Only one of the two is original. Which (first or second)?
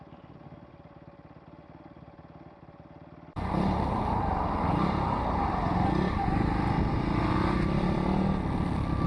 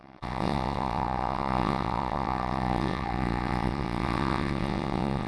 first